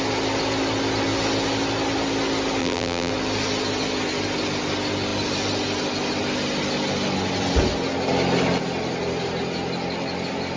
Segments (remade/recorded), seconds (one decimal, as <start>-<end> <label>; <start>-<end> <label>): 0.0-2.6 recorded; 2.6-3.1 remade; 3.1-10.6 recorded